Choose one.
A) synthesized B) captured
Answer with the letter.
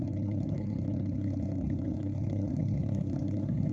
A